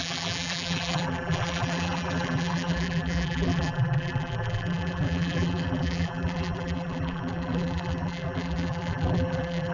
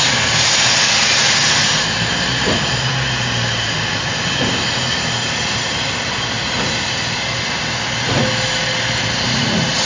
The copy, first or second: first